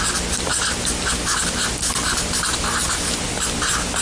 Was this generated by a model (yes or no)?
no